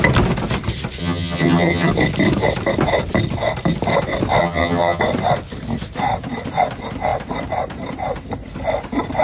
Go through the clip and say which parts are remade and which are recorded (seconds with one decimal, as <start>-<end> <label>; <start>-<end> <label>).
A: 0.0-1.0 recorded; 1.0-1.9 remade; 1.9-4.4 recorded; 4.4-5.0 remade; 5.0-9.2 recorded